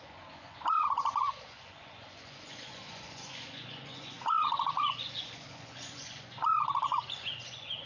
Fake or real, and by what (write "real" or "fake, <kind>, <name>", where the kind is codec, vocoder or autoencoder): fake, vocoder, Vocos